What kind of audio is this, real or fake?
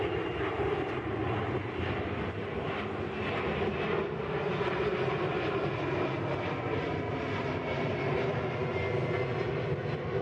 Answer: real